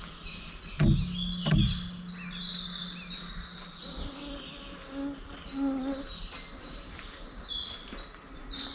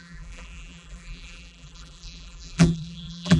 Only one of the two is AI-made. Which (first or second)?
second